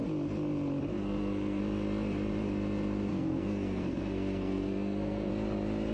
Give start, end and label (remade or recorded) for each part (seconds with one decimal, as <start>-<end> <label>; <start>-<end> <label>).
0.0-0.9 recorded; 0.9-1.6 remade; 1.6-3.1 recorded; 3.1-5.3 remade; 5.3-5.9 recorded